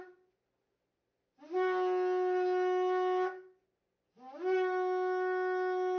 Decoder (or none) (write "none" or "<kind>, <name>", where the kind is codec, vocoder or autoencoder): none